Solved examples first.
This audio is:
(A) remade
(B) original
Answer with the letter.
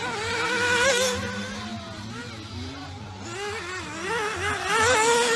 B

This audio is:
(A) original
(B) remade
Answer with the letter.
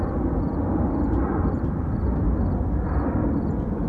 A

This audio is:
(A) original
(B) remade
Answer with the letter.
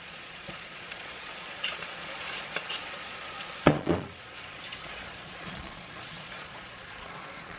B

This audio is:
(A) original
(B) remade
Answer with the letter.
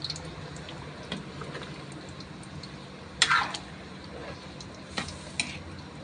A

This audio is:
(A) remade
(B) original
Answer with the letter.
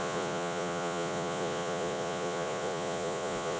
A